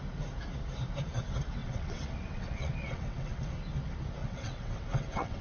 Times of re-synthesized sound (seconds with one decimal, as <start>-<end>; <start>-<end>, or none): 1.6-3.5; 4.2-5.4